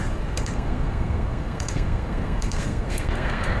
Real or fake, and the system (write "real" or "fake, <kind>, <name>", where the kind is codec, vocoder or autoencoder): fake, codec, SNAC